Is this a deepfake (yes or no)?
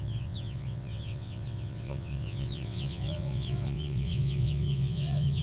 yes